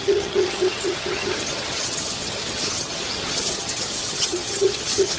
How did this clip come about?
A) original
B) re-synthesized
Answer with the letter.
B